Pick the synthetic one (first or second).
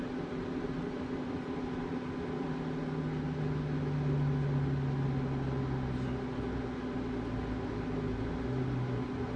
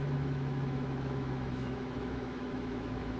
second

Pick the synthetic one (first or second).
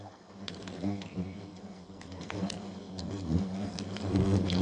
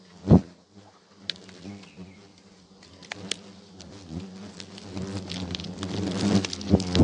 first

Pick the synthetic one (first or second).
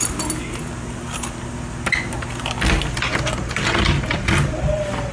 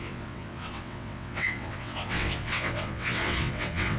second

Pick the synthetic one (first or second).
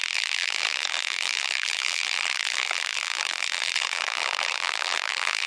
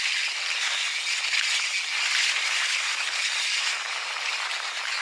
first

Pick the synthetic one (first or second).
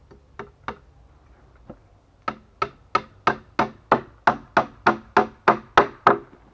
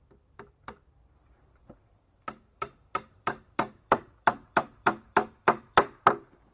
second